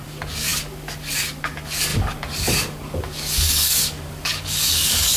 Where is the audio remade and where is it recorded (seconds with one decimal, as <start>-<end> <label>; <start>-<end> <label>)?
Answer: 0.0-5.2 remade